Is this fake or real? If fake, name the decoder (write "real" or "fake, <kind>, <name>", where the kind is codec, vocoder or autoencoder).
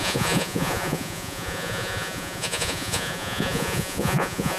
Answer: fake, vocoder, Vocos